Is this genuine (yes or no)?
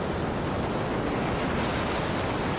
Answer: yes